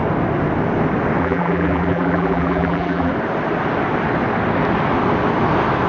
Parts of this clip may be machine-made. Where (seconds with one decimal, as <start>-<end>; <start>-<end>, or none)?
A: 1.2-3.1